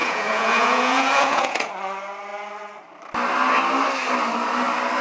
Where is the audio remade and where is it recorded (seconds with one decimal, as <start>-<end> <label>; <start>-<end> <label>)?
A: 0.0-1.7 remade; 1.7-5.0 recorded